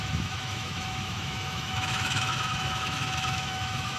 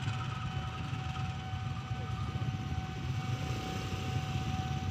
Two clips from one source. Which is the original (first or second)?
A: second